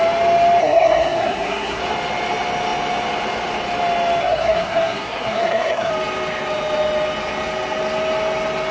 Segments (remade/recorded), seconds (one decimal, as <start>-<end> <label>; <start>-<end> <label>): 0.0-0.6 recorded; 0.6-1.8 remade; 1.8-4.2 recorded; 4.2-5.9 remade; 5.9-8.7 recorded